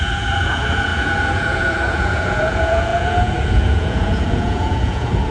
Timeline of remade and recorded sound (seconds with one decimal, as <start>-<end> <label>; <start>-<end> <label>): 0.0-5.3 remade